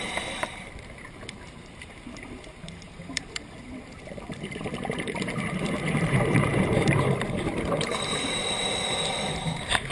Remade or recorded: remade